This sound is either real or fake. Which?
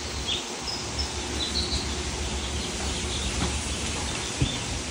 real